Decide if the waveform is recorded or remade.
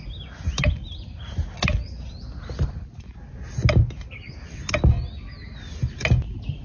recorded